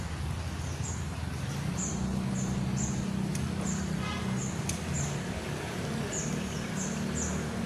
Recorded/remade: recorded